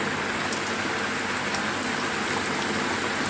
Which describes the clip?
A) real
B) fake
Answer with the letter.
A